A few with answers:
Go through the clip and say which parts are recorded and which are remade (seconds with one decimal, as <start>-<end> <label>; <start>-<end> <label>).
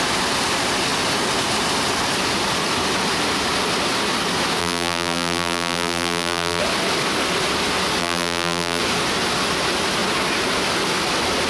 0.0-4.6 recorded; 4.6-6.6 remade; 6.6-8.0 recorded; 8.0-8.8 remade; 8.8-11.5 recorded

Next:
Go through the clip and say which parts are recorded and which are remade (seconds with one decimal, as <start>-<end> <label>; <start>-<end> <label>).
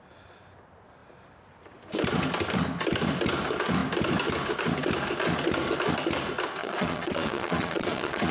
0.0-6.6 recorded; 6.6-8.3 remade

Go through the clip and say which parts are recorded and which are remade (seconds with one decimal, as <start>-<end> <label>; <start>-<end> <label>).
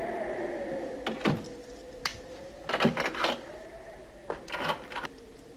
0.0-5.6 recorded